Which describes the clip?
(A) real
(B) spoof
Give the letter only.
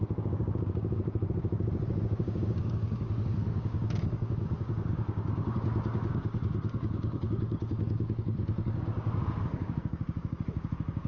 B